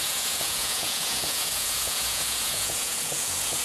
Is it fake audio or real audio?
fake